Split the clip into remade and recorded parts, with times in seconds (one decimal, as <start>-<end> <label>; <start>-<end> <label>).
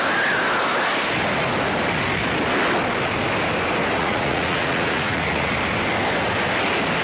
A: 0.0-4.0 recorded; 4.0-5.5 remade; 5.5-7.0 recorded